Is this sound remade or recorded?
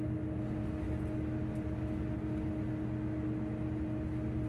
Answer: recorded